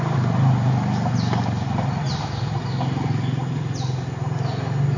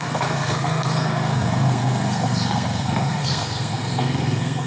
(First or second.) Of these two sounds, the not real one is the second